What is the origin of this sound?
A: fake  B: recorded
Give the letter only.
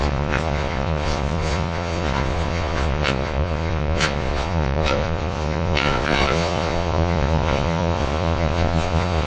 A